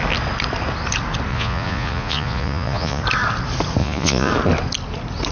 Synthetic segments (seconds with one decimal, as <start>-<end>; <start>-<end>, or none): 1.3-3.0; 3.8-4.3